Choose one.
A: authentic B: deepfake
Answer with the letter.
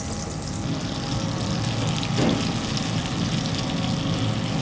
A